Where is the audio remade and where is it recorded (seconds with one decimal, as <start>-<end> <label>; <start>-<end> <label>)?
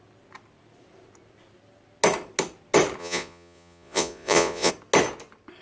0.0-3.0 recorded; 3.0-4.7 remade; 4.7-5.6 recorded